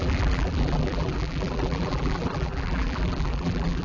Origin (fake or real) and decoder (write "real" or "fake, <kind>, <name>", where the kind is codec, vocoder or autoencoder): fake, vocoder, BigVGAN v2